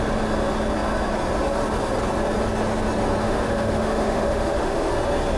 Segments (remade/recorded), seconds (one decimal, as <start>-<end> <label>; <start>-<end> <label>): 0.0-3.2 recorded; 3.2-4.9 remade; 4.9-5.4 recorded